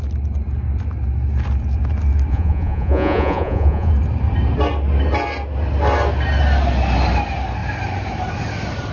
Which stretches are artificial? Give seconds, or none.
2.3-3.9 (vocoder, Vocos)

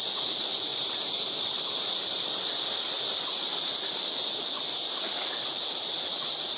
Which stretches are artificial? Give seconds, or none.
none

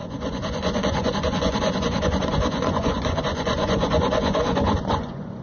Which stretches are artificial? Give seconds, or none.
0.0-5.4 (vocoder, Vocos)

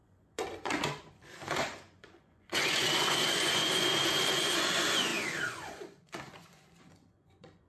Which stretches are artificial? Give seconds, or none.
0.0-7.7 (vocoder, Vocos)

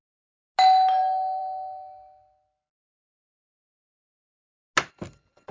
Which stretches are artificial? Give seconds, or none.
none